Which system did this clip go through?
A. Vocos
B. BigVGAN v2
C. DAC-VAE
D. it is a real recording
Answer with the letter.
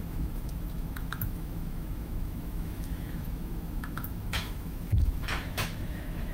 C